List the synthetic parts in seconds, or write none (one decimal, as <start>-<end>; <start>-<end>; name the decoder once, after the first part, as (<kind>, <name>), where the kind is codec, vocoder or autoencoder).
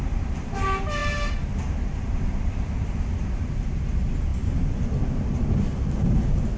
none